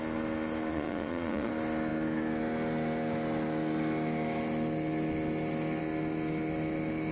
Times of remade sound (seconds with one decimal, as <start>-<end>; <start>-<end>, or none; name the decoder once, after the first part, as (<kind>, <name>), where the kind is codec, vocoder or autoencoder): 0.7-1.5 (vocoder, Vocos)